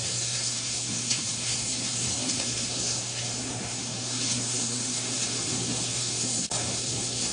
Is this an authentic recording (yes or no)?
no